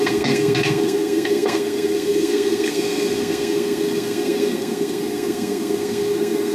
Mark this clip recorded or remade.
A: remade